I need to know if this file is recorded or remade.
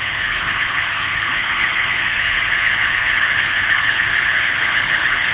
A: remade